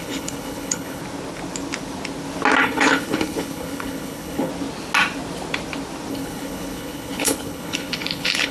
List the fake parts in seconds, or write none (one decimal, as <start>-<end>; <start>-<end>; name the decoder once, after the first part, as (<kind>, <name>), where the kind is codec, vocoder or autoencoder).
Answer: 0.0-1.0 (codec, HILCodec); 2.6-4.5; 6.1-8.5

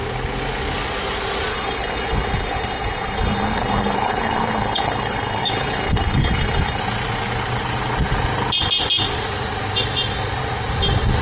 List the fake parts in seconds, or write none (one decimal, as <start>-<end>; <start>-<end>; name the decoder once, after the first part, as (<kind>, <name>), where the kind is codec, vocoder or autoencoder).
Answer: 1.5-6.8 (codec, HILCodec)